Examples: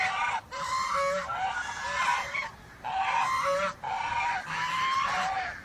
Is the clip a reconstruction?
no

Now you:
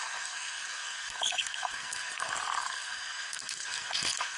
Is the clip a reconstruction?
yes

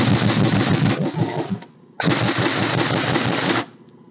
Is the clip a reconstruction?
no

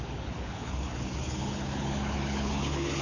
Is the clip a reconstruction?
yes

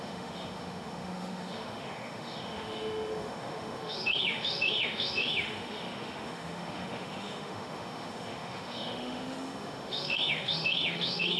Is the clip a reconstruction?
yes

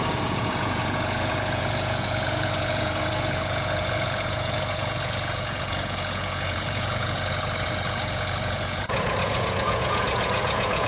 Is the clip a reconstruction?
yes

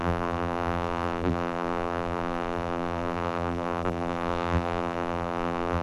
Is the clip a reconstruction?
yes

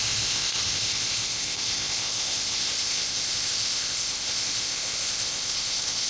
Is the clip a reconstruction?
yes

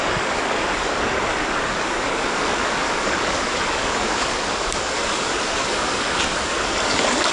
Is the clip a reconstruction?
yes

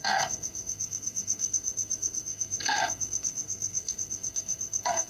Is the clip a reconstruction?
yes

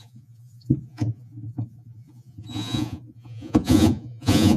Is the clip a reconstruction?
yes